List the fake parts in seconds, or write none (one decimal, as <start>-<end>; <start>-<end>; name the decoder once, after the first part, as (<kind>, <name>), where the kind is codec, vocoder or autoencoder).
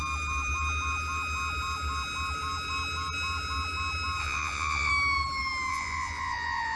4.2-4.9 (vocoder, Vocos); 5.7-6.8